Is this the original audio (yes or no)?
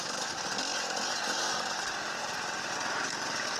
yes